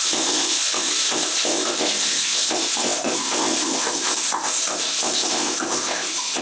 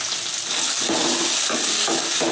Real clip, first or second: second